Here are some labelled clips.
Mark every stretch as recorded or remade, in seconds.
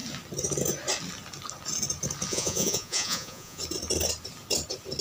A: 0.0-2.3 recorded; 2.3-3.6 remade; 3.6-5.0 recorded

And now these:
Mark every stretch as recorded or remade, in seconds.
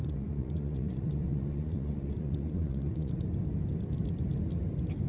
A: 0.0-3.1 remade; 3.1-5.1 recorded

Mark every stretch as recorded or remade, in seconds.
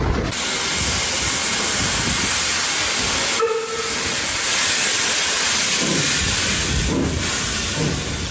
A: 0.0-8.3 recorded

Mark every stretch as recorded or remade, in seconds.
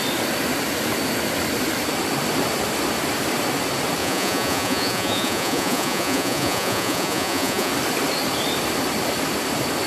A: 0.0-4.0 recorded; 4.0-7.7 remade; 7.7-9.9 recorded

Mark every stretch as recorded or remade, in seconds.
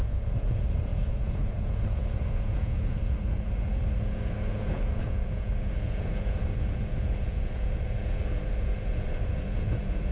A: 0.0-10.1 remade